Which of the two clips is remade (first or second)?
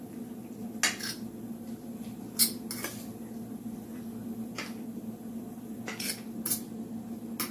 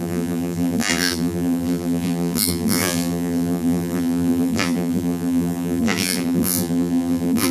second